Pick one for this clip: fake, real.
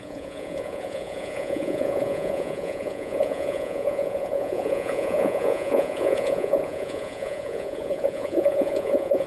fake